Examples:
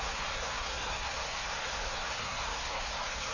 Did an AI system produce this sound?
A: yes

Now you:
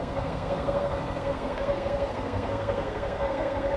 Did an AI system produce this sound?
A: yes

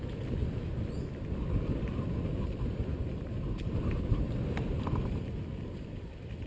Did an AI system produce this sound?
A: no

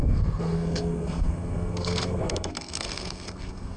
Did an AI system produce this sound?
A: yes